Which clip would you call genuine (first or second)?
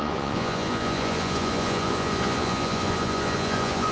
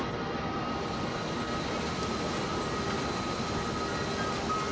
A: second